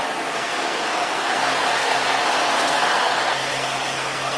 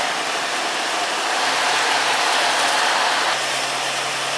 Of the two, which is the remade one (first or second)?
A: first